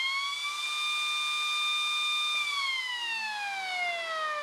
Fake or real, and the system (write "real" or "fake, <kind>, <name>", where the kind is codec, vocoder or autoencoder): real